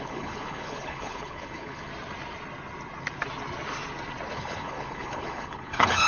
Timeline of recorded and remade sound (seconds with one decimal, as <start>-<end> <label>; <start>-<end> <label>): 0.0-1.9 remade; 1.9-4.3 recorded; 4.3-6.1 remade